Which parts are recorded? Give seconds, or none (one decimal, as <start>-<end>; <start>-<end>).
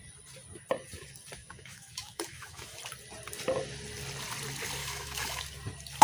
0.0-1.4; 2.8-4.8; 5.4-6.0